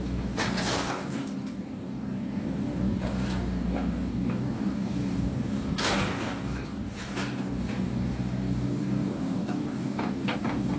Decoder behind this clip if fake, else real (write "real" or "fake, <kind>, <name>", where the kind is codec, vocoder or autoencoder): fake, codec, DAC